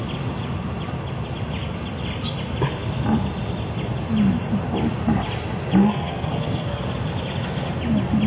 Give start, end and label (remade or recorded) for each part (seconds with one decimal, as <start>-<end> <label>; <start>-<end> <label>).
0.0-5.8 recorded; 5.8-6.8 remade; 6.8-8.3 recorded

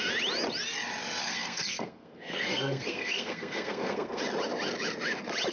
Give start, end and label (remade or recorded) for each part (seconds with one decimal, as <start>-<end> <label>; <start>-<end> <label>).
0.0-1.2 recorded; 1.2-4.2 remade; 4.2-5.5 recorded

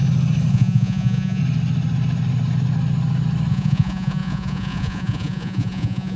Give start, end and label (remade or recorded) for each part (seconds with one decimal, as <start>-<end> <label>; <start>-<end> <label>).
0.0-0.5 recorded; 0.5-1.4 remade; 1.4-3.5 recorded; 3.5-6.2 remade

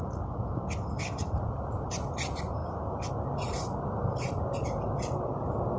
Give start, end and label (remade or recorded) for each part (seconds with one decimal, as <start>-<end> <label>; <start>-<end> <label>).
0.0-5.8 recorded

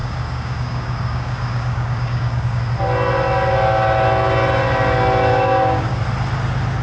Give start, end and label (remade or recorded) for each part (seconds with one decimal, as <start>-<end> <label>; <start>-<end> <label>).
0.0-2.6 remade; 2.6-5.3 recorded; 5.3-6.0 remade; 6.0-6.8 recorded

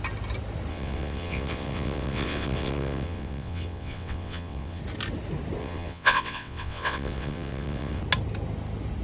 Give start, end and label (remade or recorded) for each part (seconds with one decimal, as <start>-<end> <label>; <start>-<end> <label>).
0.0-0.7 recorded; 0.7-4.8 remade; 4.8-5.6 recorded; 5.6-8.0 remade; 8.0-9.0 recorded